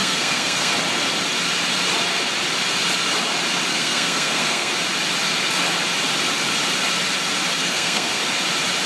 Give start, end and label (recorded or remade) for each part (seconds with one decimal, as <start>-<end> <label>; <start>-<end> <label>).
0.0-0.7 remade; 0.7-3.7 recorded; 3.7-4.7 remade; 4.7-7.6 recorded; 7.6-8.2 remade; 8.2-8.9 recorded